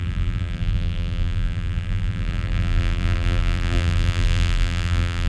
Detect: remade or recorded remade